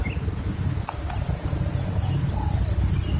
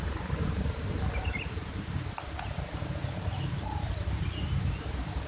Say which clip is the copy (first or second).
second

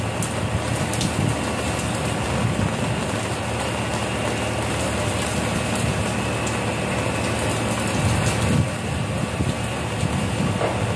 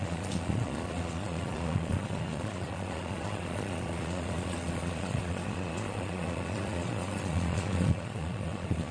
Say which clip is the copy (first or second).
second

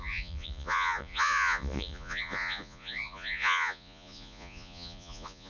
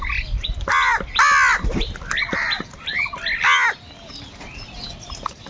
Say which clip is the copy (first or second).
first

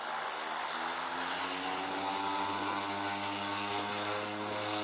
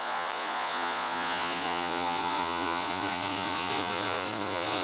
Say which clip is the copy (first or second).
second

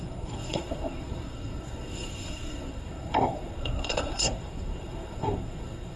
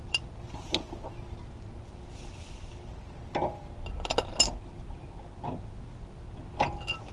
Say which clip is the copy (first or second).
first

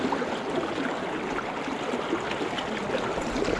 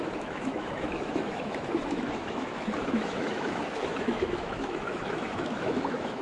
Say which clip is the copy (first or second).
second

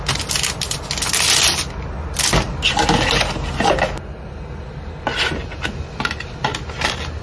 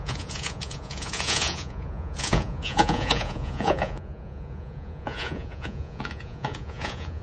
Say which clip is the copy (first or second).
second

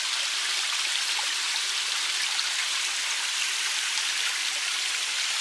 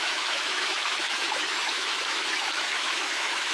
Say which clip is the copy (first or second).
second